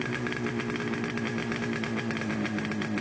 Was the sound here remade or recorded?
recorded